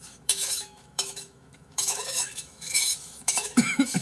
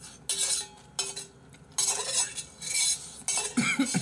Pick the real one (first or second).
second